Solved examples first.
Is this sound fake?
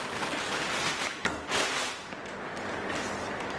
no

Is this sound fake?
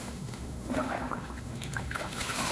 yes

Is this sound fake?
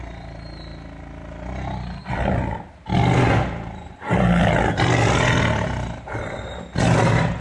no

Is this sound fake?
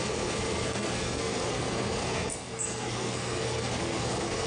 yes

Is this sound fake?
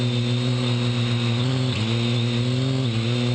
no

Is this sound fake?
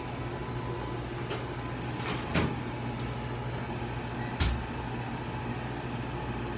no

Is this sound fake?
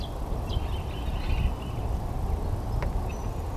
no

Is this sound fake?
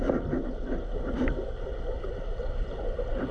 no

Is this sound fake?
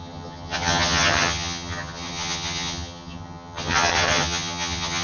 yes